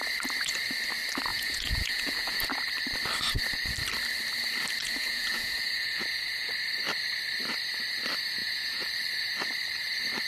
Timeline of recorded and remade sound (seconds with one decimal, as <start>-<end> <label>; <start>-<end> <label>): 0.0-1.3 recorded; 1.3-2.5 remade; 2.5-4.8 recorded; 4.8-6.5 remade; 6.5-8.4 recorded; 8.4-8.9 remade; 8.9-10.3 recorded